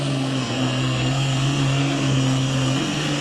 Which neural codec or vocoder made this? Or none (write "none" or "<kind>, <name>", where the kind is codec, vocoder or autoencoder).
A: codec, SNAC